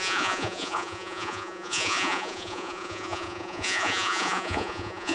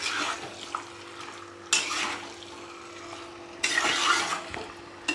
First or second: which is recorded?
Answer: second